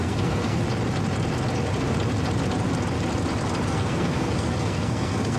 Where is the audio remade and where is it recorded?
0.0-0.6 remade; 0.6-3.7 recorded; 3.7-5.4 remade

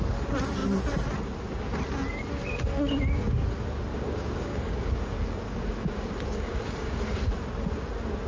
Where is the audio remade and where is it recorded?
0.0-3.9 recorded; 3.9-7.3 remade; 7.3-8.3 recorded

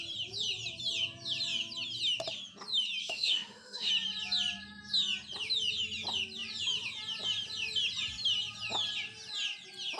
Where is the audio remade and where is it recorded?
0.0-3.0 recorded; 3.0-3.9 remade; 3.9-10.0 recorded

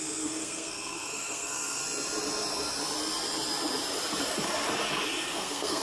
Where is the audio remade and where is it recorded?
0.0-1.8 remade; 1.8-5.3 recorded; 5.3-5.8 remade

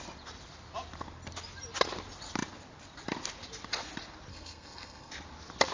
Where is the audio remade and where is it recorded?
0.0-4.3 recorded; 4.3-5.1 remade; 5.1-5.7 recorded

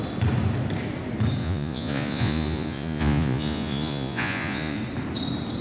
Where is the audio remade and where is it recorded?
0.0-1.4 recorded; 1.4-4.8 remade; 4.8-5.6 recorded

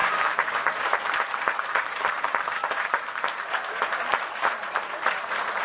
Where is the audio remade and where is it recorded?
0.0-5.6 remade